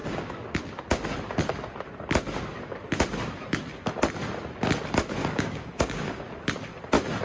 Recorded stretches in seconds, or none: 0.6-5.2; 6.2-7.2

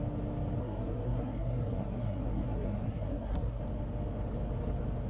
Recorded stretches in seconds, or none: 0.0-0.6; 3.6-5.1

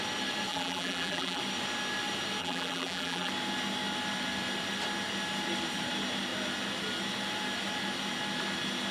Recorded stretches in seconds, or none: 0.0-0.5; 1.4-2.4; 3.3-8.9

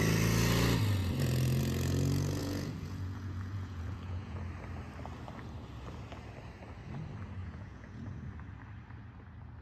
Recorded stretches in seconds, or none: 0.0-2.4; 4.4-7.4; 8.3-9.6

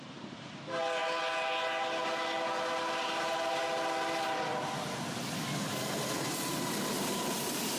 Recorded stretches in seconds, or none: 1.0-3.0; 3.6-6.5

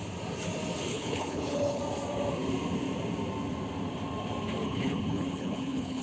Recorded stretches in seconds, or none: 0.0-0.9; 1.8-4.6

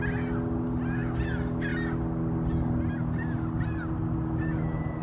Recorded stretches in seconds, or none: 0.0-5.0

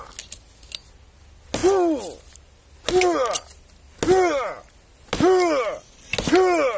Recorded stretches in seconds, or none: 0.0-6.8